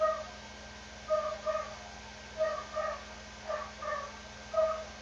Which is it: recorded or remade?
recorded